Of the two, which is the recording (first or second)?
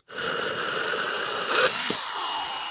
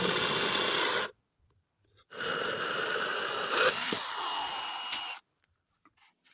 second